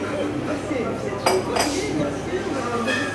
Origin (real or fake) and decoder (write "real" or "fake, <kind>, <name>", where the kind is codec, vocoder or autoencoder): real